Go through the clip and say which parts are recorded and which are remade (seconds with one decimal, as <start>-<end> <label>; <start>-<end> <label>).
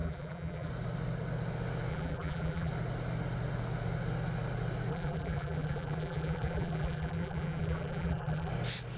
0.0-0.7 remade; 0.7-1.9 recorded; 1.9-2.7 remade; 2.7-4.9 recorded; 4.9-8.5 remade; 8.5-9.0 recorded